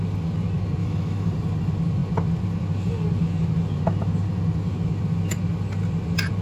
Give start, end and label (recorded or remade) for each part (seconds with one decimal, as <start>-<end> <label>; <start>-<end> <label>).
0.0-0.8 recorded; 0.8-1.3 remade; 1.3-6.4 recorded